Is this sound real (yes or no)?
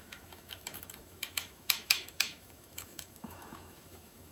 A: no